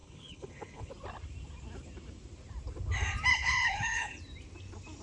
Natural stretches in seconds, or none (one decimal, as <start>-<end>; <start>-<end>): 0.9-3.3; 4.2-5.0